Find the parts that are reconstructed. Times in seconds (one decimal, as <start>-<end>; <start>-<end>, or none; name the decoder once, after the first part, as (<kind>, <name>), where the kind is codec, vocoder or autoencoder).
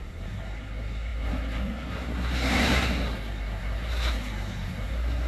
0.0-5.3 (codec, SNAC)